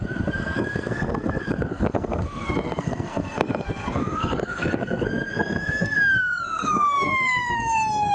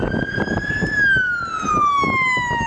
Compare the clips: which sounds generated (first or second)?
first